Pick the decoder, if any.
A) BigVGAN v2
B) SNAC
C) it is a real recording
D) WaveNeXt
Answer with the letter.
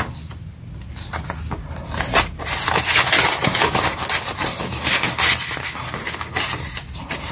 C